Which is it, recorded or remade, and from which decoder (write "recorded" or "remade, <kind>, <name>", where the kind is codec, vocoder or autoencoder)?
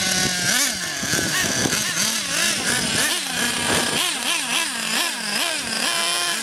recorded